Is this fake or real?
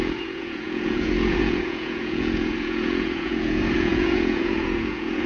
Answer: fake